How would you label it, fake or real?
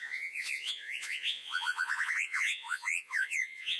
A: fake